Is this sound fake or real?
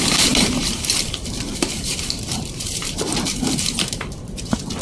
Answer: fake